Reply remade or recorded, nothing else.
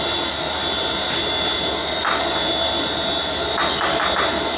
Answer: recorded